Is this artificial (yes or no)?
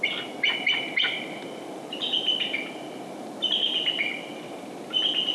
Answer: no